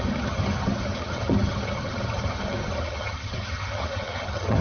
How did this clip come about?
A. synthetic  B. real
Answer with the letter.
A